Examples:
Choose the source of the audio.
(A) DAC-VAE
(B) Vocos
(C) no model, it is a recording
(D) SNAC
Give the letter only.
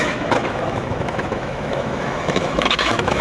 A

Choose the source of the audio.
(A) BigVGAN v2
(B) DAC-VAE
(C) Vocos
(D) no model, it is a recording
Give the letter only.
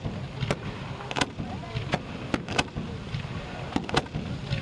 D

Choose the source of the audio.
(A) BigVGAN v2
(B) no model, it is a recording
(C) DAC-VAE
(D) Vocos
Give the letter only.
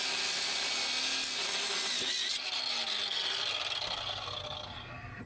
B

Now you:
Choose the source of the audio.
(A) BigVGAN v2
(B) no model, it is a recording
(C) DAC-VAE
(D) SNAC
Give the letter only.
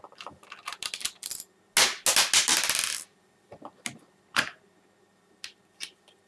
B